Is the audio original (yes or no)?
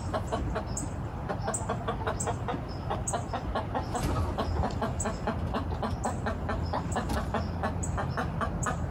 yes